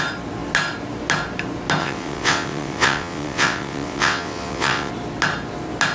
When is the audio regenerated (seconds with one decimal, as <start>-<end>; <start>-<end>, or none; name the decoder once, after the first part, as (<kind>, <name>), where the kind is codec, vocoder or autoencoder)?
1.8-4.9 (vocoder, WaveNeXt)